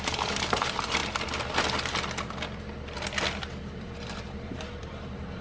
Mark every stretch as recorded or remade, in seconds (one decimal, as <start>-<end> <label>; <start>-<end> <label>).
0.0-1.0 remade; 1.0-3.7 recorded; 3.7-5.4 remade